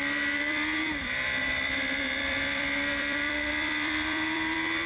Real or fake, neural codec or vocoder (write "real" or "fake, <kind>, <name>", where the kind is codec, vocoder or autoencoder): fake, vocoder, BigVGAN v2